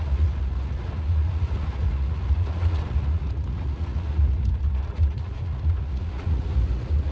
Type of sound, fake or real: fake